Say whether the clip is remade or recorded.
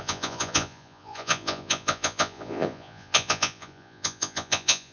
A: remade